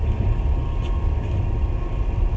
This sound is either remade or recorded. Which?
recorded